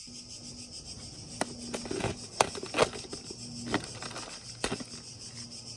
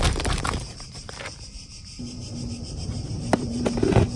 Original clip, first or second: first